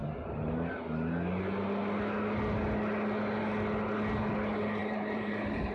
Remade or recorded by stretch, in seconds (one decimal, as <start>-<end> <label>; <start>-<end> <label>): 0.0-4.8 recorded; 4.8-5.7 remade